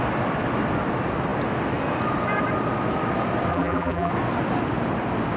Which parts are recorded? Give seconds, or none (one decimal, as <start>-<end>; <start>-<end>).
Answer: 0.0-3.5; 4.1-5.4